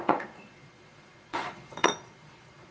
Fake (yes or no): yes